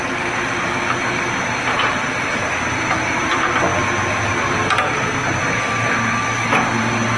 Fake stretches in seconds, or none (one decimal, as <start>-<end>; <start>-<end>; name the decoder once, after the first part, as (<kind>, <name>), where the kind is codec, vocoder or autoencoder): none

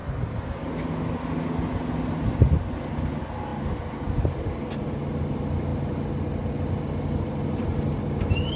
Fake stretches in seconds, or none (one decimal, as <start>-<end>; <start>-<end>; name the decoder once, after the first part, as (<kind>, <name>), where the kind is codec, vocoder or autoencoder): none

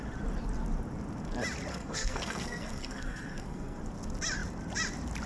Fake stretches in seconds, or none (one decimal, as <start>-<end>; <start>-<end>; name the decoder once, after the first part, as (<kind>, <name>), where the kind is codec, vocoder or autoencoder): 1.7-3.8 (codec, SNAC)

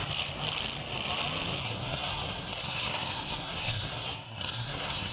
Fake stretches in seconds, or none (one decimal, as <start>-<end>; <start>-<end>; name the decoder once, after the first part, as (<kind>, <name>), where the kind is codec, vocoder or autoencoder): 1.6-5.1 (codec, SNAC)

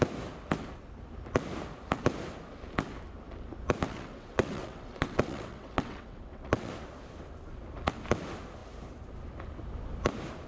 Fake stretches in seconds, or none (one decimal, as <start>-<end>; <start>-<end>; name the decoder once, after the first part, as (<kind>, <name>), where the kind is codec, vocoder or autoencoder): 3.9-6.7 (vocoder, WaveNeXt)